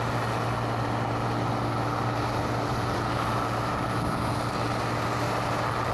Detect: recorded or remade recorded